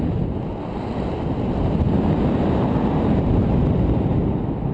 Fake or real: real